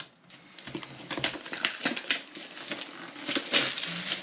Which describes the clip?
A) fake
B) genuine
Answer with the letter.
B